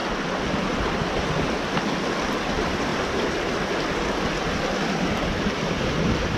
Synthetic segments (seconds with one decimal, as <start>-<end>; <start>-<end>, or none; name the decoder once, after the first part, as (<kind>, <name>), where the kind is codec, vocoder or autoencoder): 0.0-0.8 (vocoder, BigVGAN v2)